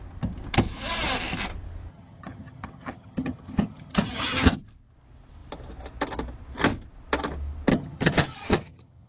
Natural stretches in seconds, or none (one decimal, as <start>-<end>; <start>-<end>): 0.0-1.9; 4.6-7.7